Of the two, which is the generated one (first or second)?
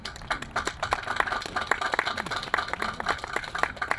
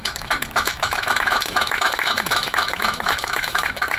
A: second